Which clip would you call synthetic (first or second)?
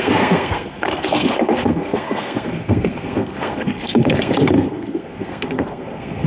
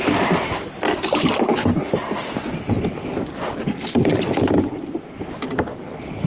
first